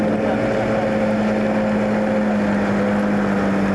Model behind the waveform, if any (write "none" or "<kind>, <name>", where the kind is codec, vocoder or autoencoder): none